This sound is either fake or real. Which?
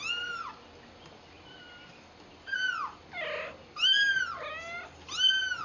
real